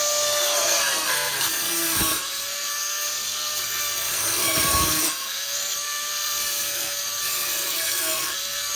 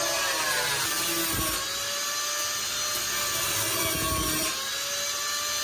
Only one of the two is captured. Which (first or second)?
second